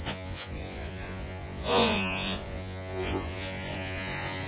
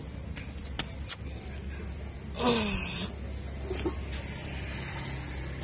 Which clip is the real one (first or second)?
second